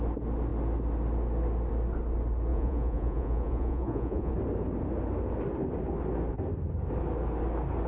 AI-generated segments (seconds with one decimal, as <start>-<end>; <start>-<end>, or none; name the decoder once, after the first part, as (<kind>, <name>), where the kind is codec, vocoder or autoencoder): 2.5-4.3 (vocoder, Vocos)